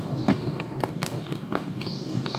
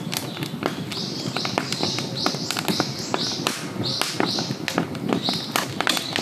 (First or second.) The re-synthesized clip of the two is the first